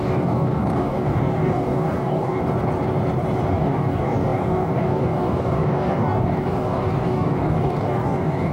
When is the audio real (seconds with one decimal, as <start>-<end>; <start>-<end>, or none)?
2.4-3.5

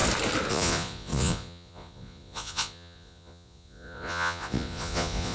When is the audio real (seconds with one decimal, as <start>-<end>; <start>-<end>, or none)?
0.0-0.5